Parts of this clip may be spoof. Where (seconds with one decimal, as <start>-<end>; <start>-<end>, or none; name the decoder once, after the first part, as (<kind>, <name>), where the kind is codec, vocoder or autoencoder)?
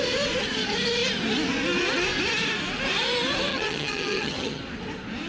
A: 3.5-4.6 (vocoder, HiFi-GAN)